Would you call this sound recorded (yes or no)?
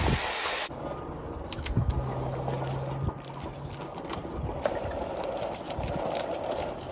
yes